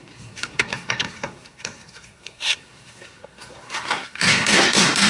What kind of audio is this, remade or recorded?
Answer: remade